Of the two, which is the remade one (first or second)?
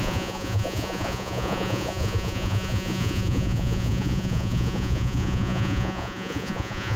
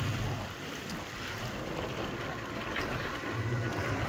first